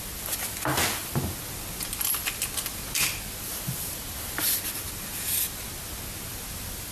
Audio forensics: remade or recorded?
recorded